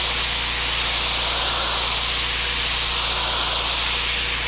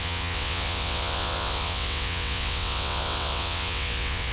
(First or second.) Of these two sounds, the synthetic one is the second